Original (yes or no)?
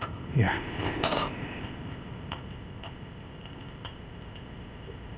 no